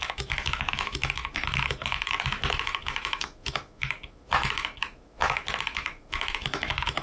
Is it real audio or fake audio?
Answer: fake